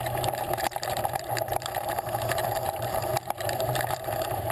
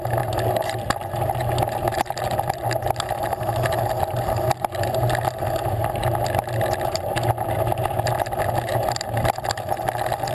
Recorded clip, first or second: second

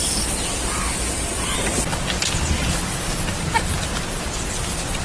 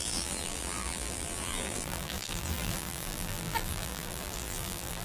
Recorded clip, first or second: first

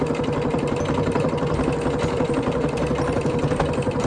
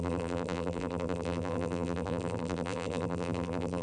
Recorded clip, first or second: first